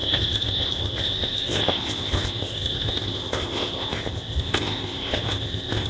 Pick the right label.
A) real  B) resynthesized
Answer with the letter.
B